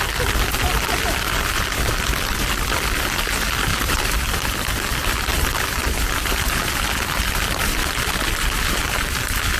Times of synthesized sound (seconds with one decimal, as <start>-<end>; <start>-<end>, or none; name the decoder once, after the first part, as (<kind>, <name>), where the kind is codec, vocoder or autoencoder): 3.7-4.6 (vocoder, BigVGAN v2); 5.3-8.7